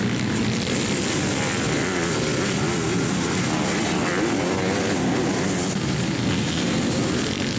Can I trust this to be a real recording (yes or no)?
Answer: yes